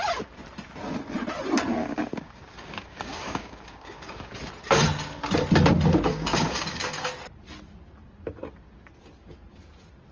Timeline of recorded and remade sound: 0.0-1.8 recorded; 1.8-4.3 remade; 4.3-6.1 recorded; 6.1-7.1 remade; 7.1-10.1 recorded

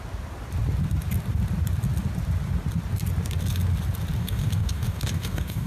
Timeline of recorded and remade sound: 0.0-4.2 recorded; 4.2-5.7 remade

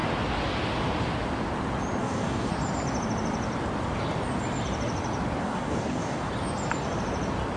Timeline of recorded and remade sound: 0.0-2.0 recorded; 2.0-2.5 remade; 2.5-5.4 recorded; 5.4-6.3 remade; 6.3-7.6 recorded

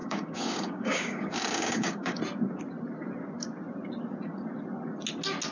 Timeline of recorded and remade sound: 0.0-2.2 remade; 2.2-5.5 recorded

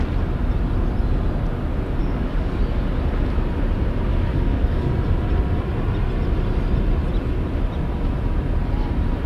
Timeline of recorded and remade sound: 0.0-2.0 recorded; 2.0-2.6 remade; 2.6-4.1 recorded; 4.1-4.9 remade; 4.9-9.3 recorded

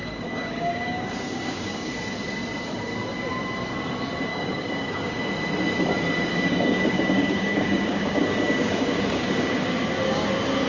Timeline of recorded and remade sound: 0.0-1.9 remade; 1.9-4.3 recorded; 4.3-5.2 remade; 5.2-6.3 recorded; 6.3-9.8 remade; 9.8-10.7 recorded

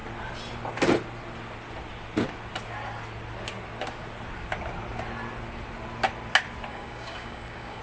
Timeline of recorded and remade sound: 0.0-6.7 recorded; 6.7-7.8 remade